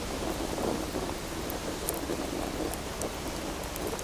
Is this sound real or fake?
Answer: real